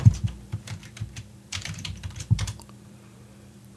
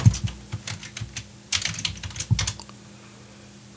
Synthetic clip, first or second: first